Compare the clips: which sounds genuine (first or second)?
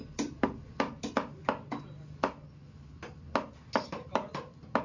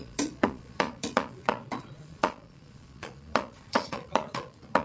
first